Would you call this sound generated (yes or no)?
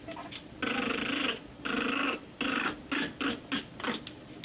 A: no